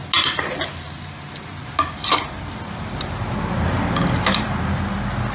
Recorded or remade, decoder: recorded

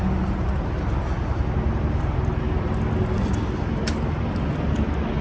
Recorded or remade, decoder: recorded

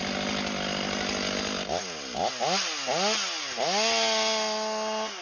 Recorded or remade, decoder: recorded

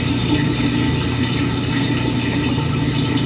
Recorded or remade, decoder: recorded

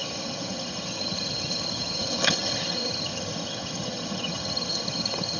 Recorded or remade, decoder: remade, vocoder, HiFi-GAN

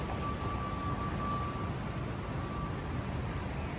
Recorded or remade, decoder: recorded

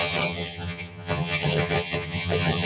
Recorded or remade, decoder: remade, vocoder, HiFi-GAN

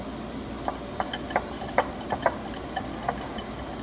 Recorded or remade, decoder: recorded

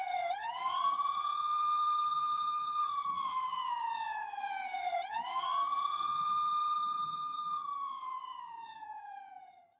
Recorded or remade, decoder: remade, vocoder, HiFi-GAN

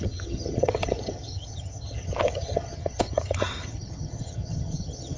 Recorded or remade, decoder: remade, vocoder, HiFi-GAN